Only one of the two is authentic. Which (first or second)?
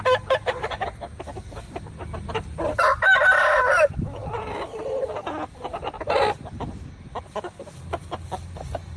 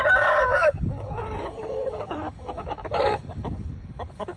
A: first